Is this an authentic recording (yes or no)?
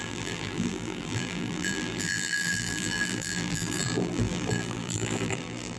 no